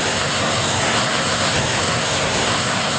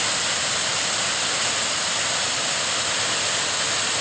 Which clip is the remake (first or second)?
first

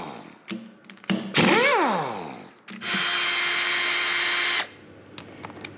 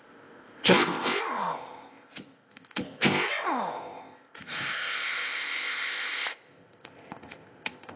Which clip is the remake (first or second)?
second